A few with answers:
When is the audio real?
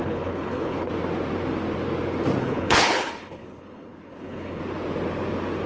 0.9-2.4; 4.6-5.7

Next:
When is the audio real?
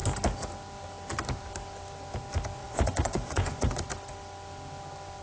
0.0-2.6; 3.8-5.2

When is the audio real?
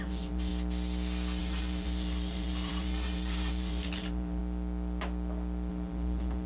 0.5-1.4; 4.4-5.7